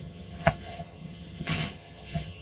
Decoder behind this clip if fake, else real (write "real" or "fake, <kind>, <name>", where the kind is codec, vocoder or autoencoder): fake, vocoder, HiFi-GAN